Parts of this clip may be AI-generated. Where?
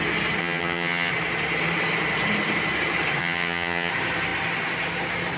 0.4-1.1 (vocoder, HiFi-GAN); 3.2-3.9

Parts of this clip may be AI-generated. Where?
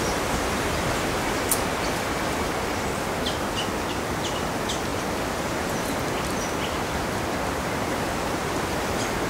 none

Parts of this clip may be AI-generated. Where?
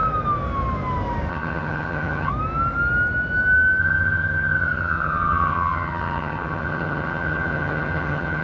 1.3-2.3 (vocoder, HiFi-GAN); 3.8-8.4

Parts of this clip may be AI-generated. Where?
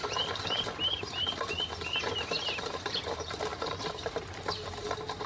3.5-4.1 (vocoder, BigVGAN v2)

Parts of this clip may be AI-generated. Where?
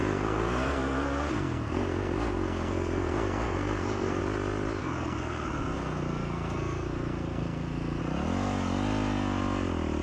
0.0-4.2 (codec, SNAC); 4.8-8.0